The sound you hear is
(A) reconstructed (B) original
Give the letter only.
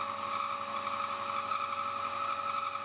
B